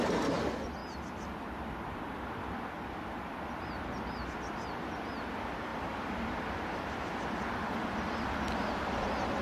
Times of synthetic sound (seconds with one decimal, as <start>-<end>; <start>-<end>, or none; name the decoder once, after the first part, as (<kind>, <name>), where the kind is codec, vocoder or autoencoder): 5.7-9.4 (vocoder, BigVGAN v2)

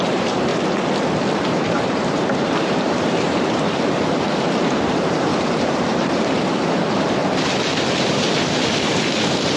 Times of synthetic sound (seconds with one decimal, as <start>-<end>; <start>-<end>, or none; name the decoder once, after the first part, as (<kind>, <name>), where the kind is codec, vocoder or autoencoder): 0.0-0.5 (vocoder, BigVGAN v2); 1.5-7.2; 7.8-9.6

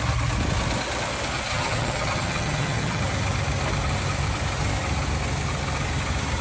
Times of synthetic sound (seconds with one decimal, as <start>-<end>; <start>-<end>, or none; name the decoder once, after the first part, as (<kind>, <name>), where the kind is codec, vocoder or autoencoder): 1.5-3.0 (vocoder, HiFi-GAN)

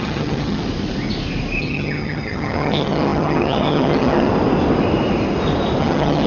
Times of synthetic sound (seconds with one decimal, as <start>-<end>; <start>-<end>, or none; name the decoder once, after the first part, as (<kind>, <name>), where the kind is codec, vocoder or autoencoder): 0.0-0.6 (vocoder, HiFi-GAN); 1.6-4.3; 5.8-6.3

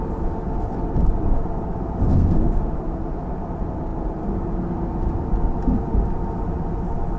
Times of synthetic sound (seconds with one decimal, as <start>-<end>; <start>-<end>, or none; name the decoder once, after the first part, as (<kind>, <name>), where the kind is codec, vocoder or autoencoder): 2.1-2.6 (codec, SNAC)